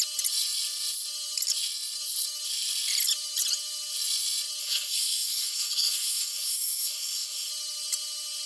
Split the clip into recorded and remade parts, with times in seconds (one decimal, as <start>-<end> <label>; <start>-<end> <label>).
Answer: 0.0-4.6 recorded; 4.6-7.5 remade; 7.5-8.5 recorded